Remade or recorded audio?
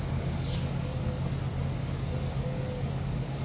remade